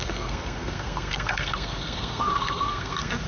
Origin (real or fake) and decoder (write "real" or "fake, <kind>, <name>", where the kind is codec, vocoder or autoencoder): fake, codec, SNAC